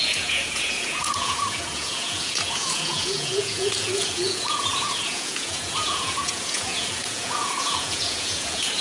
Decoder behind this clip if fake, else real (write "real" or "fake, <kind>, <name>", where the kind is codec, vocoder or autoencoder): fake, vocoder, Vocos